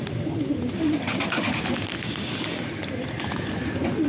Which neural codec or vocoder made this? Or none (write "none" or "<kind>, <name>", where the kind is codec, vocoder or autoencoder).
none